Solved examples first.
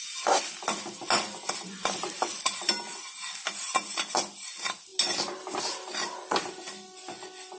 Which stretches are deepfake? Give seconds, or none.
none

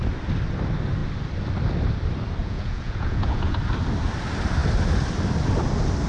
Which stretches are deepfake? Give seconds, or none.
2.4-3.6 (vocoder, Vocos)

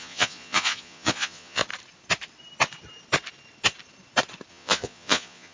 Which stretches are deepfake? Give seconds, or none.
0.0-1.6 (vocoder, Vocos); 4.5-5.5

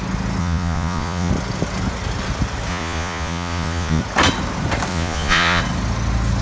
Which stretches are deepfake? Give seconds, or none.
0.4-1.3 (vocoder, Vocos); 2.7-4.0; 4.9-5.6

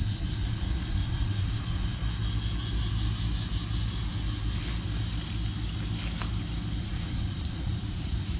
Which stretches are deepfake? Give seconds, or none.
0.0-2.0 (vocoder, Vocos); 6.8-8.4